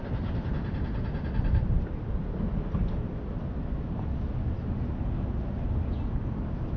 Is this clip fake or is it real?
real